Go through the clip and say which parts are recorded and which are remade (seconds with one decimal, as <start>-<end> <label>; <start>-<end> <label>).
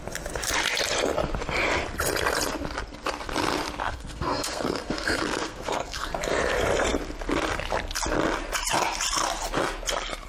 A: 0.0-3.8 recorded; 3.8-6.1 remade; 6.1-10.3 recorded